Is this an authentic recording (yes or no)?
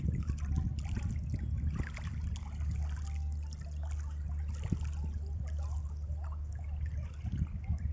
yes